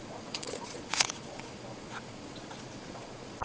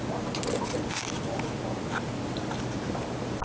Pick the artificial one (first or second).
first